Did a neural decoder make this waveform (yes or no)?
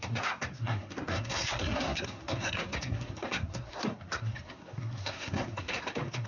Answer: yes